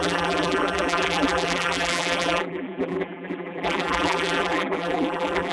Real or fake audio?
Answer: fake